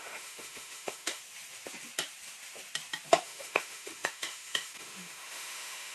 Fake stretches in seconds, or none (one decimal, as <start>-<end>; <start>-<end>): 0.0-1.2; 3.2-5.9